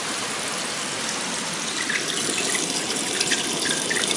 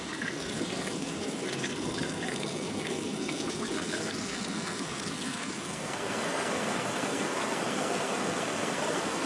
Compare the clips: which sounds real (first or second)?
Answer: first